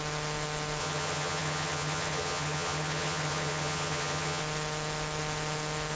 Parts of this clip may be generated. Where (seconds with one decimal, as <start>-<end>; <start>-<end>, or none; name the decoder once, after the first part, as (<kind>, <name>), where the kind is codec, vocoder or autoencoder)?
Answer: 0.8-4.4 (vocoder, HiFi-GAN)